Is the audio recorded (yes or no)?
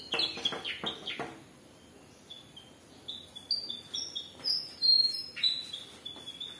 yes